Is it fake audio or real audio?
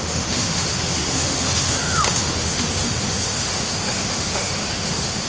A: fake